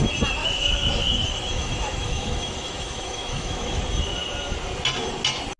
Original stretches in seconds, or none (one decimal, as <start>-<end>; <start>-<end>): 0.0-0.4; 3.8-5.6